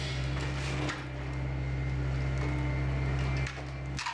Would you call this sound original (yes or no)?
yes